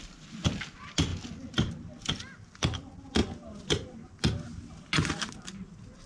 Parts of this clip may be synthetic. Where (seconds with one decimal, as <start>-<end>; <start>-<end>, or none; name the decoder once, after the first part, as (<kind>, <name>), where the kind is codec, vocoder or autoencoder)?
none